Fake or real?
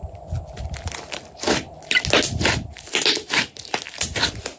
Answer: real